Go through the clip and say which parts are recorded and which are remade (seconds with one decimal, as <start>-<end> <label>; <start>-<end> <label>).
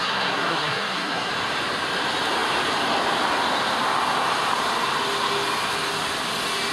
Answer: 0.0-1.3 remade; 1.3-6.7 recorded